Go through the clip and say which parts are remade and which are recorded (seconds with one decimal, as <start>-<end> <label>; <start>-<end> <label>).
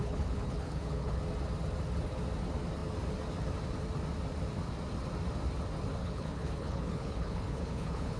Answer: 0.0-1.2 remade; 1.2-6.0 recorded; 6.0-8.2 remade